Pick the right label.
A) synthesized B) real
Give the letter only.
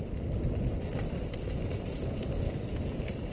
B